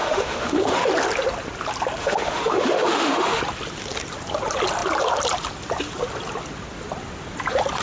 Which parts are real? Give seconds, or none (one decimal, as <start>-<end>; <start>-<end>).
0.9-2.0; 3.4-7.8